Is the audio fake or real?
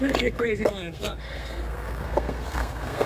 fake